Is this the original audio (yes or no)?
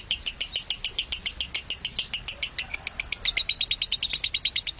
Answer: yes